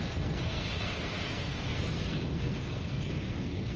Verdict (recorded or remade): remade